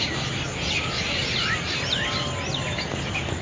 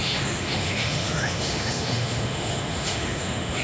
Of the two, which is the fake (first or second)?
second